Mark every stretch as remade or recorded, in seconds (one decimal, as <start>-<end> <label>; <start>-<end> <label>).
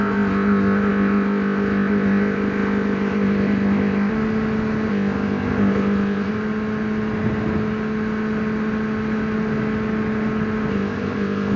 0.0-4.1 remade; 4.1-4.9 recorded; 4.9-6.3 remade; 6.3-10.7 recorded; 10.7-11.6 remade